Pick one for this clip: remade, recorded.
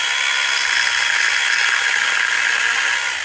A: recorded